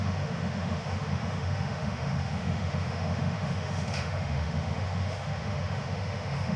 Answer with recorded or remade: remade